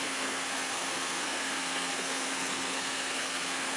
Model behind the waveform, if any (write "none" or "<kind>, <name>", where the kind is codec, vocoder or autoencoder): codec, SNAC